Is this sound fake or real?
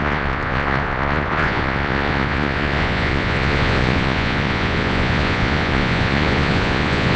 fake